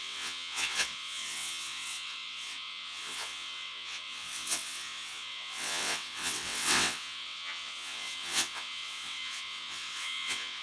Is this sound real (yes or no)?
no